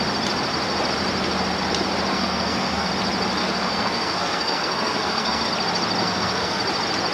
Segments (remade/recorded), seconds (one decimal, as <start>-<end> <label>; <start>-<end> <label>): 0.0-2.1 recorded; 2.1-2.9 remade; 2.9-3.4 recorded; 3.4-5.5 remade; 5.5-6.0 recorded; 6.0-6.6 remade; 6.6-7.1 recorded

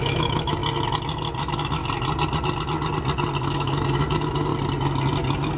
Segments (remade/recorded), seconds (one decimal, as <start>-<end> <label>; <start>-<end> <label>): 0.0-0.6 remade; 0.6-1.4 recorded; 1.4-1.8 remade; 1.8-3.4 recorded; 3.4-4.5 remade; 4.5-5.6 recorded

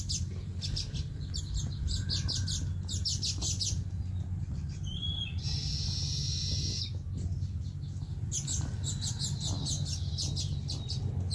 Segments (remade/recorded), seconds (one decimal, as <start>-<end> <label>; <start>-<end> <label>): 0.0-3.4 recorded; 3.4-4.0 remade; 4.0-4.9 recorded; 4.9-5.6 remade; 5.6-11.3 recorded

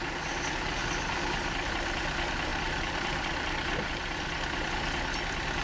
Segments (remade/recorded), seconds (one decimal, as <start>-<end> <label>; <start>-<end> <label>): 0.0-0.8 recorded; 0.8-1.7 remade; 1.7-2.5 recorded; 2.5-4.7 remade; 4.7-5.6 recorded